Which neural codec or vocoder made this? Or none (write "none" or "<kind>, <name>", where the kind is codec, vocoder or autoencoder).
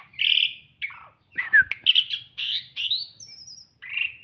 none